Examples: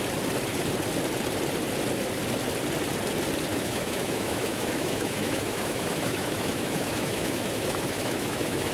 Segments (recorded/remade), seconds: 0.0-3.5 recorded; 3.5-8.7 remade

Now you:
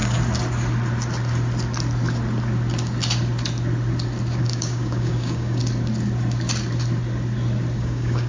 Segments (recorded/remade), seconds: 0.0-4.4 recorded; 4.4-5.6 remade; 5.6-7.8 recorded; 7.8-8.3 remade